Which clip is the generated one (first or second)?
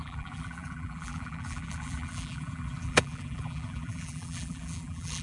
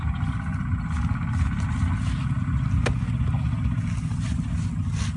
first